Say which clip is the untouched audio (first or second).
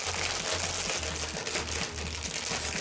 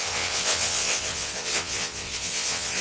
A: first